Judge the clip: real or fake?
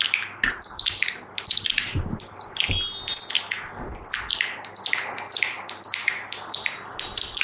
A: real